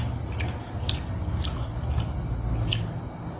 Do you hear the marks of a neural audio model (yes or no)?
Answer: no